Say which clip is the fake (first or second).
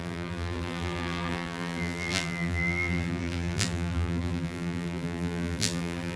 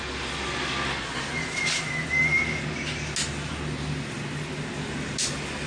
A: first